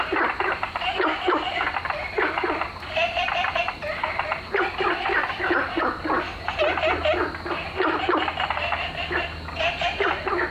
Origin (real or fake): real